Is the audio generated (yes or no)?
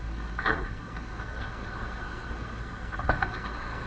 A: yes